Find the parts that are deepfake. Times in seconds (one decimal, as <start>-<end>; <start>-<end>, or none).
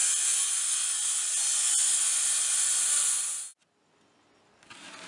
none